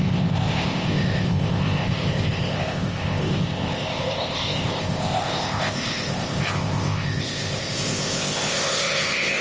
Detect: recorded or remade remade